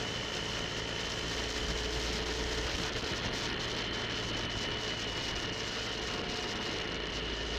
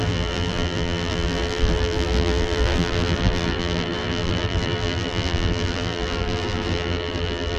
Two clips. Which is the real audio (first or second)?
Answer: first